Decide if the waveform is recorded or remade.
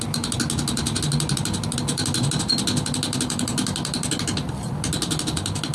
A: recorded